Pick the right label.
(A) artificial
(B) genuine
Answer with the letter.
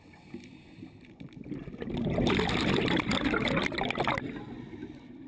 B